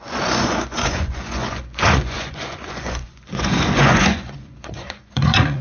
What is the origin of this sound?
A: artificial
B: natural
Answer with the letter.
A